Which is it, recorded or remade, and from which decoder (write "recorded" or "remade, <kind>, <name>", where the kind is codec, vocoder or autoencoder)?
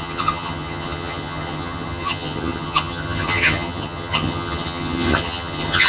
remade, vocoder, HiFi-GAN